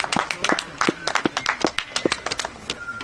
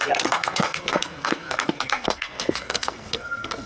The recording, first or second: first